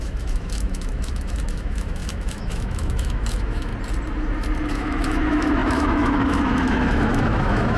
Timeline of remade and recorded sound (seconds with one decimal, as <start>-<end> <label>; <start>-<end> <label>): 0.0-3.7 remade; 3.7-4.7 recorded; 4.7-7.8 remade